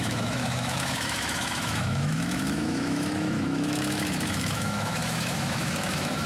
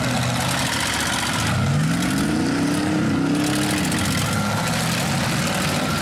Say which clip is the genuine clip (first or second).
second